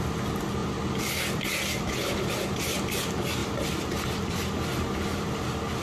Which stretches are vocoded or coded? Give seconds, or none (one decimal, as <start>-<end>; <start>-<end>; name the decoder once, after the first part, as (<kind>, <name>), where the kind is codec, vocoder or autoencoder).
0.6-2.9 (vocoder, BigVGAN v2); 3.4-4.5